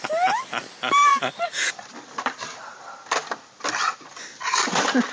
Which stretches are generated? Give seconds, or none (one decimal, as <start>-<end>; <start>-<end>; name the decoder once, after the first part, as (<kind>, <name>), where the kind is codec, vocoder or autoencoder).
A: 1.1-4.2 (vocoder, BigVGAN v2)

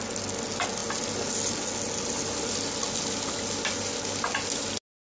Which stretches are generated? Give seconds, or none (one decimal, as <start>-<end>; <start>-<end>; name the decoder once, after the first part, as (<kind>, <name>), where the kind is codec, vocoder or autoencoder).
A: none